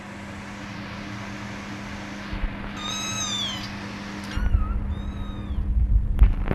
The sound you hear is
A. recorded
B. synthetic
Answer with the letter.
A